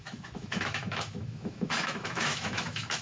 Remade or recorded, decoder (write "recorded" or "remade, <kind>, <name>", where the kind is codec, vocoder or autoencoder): remade, autoencoder, DAC-VAE